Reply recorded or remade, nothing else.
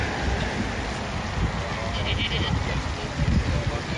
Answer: recorded